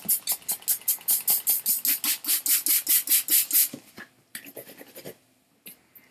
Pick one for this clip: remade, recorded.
recorded